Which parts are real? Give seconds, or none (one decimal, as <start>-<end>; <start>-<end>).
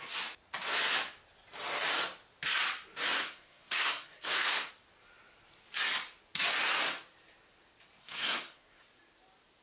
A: 0.0-3.1; 4.7-8.0; 8.8-9.6